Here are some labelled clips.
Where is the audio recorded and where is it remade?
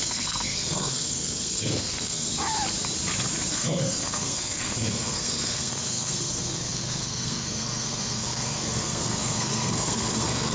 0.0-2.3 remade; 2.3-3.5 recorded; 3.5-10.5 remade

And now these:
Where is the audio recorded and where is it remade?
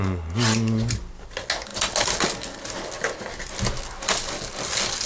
0.0-5.1 recorded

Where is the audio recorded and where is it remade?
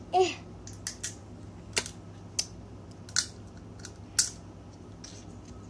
0.0-5.7 recorded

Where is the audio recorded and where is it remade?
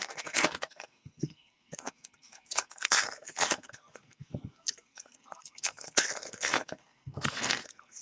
0.0-8.0 remade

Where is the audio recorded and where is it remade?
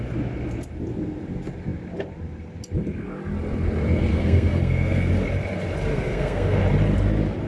0.0-4.1 recorded; 4.1-5.1 remade; 5.1-5.9 recorded; 5.9-6.6 remade; 6.6-7.5 recorded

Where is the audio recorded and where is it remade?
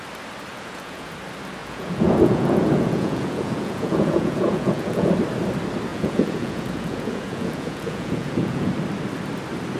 0.0-0.5 recorded; 0.5-1.1 remade; 1.1-1.6 recorded; 1.6-5.1 remade; 5.1-5.9 recorded; 5.9-8.7 remade; 8.7-9.8 recorded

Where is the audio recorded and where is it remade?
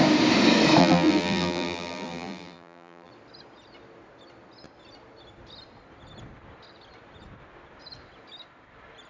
0.0-0.8 recorded; 0.8-3.1 remade; 3.1-9.1 recorded